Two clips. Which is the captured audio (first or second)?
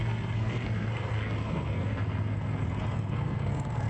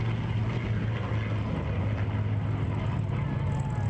second